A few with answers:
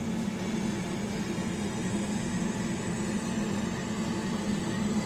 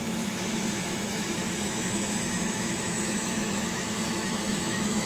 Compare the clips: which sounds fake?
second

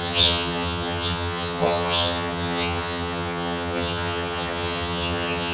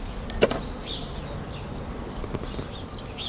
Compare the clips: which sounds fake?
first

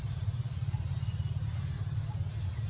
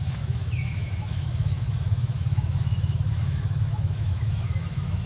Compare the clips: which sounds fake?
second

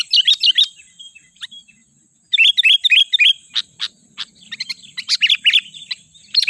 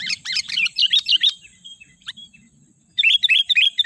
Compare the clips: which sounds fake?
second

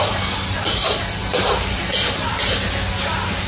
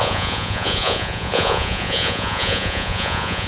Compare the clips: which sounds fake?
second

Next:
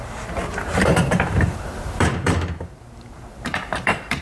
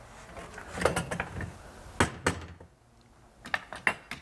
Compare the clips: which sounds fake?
first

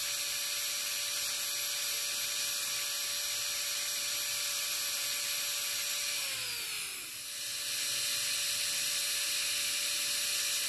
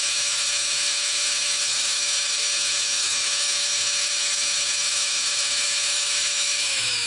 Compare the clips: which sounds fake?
second